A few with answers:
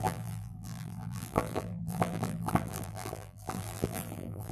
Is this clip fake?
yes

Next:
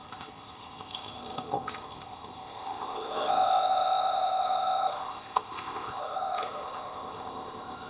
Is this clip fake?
yes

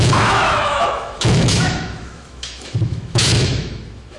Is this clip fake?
yes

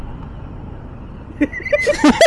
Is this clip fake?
no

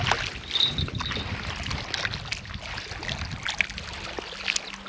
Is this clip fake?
no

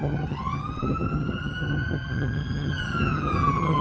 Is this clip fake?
yes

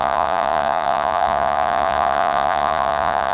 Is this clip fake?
yes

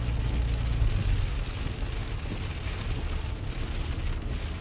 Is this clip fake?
no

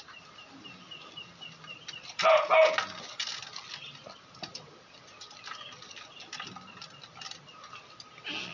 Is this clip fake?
no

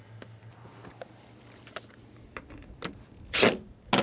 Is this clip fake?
no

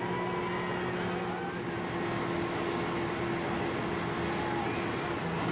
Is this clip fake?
no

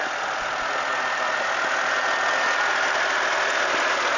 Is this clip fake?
no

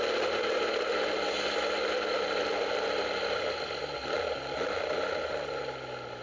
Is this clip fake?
no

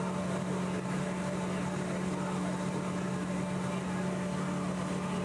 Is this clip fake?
no